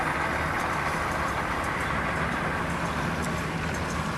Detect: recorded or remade recorded